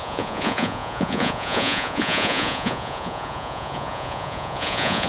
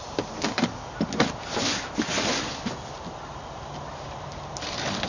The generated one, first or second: first